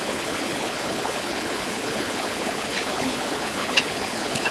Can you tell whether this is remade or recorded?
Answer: remade